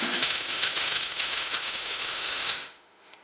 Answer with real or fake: fake